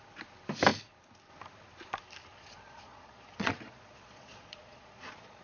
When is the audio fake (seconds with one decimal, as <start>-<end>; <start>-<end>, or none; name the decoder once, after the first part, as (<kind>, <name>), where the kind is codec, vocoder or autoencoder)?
2.3-5.4 (vocoder, Vocos)